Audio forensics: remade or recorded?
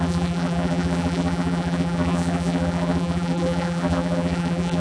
remade